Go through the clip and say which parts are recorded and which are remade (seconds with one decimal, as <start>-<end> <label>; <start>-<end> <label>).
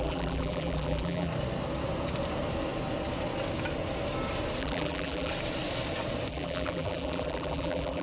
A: 0.0-1.3 remade; 1.3-4.6 recorded; 4.6-5.3 remade; 5.3-6.3 recorded; 6.3-8.0 remade